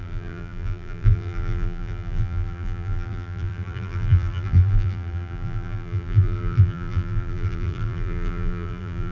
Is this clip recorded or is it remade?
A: remade